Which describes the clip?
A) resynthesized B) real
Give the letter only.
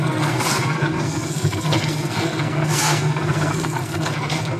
A